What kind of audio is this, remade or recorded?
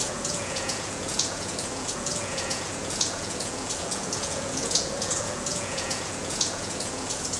remade